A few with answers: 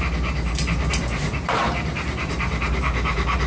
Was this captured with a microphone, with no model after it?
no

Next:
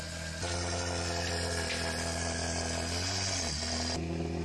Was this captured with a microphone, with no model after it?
yes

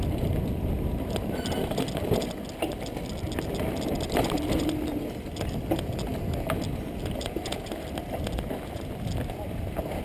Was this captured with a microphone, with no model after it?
yes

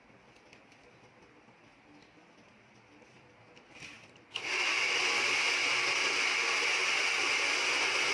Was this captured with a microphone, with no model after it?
yes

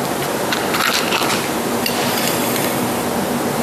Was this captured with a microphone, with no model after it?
no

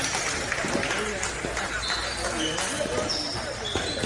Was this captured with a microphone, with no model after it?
yes